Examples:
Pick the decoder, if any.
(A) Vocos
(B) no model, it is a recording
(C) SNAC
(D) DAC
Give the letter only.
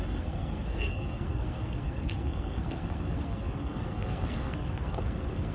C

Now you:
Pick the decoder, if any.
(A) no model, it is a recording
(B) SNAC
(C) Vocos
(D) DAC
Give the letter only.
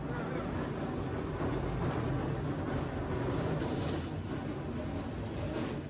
A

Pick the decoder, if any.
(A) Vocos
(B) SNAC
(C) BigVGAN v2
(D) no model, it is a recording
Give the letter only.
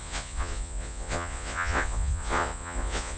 A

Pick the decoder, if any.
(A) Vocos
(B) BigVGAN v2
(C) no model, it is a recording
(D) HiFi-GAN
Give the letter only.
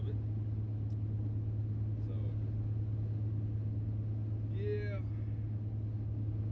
C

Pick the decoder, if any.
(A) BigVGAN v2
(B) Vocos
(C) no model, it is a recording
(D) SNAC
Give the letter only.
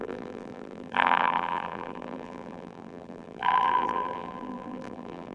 A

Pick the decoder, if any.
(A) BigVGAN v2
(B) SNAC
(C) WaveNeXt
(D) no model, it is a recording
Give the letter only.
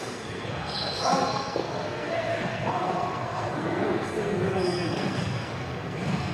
B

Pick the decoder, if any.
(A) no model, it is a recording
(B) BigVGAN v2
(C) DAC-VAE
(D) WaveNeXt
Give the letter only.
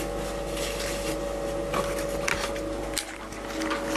A